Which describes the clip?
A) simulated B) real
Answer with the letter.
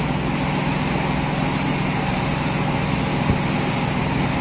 B